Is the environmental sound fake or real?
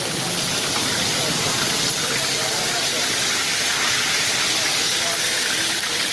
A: fake